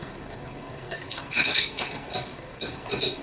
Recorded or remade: remade